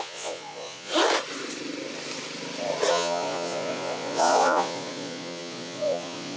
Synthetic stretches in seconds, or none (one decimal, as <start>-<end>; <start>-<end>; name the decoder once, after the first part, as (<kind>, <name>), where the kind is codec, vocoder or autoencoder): 0.0-0.9 (vocoder, Vocos); 2.9-6.4

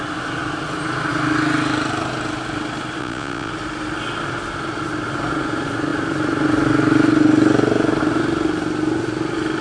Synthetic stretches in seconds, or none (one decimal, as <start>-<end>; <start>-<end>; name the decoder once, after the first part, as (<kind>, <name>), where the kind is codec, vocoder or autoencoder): 3.0-3.5 (vocoder, Vocos)

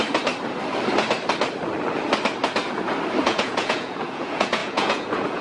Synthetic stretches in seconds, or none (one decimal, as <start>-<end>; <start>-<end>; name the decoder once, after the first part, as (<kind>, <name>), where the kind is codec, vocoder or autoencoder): 3.2-5.4 (vocoder, Vocos)